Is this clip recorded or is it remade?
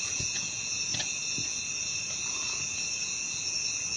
remade